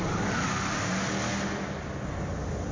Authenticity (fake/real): real